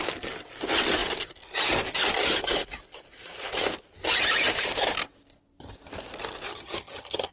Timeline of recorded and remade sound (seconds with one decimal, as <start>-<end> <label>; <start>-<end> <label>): 0.0-6.5 recorded; 6.5-7.3 remade